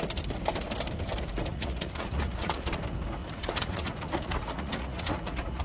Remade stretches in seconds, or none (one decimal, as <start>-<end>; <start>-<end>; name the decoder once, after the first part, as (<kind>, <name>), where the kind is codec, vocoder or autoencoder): 1.5-2.8 (vocoder, Vocos); 3.2-5.6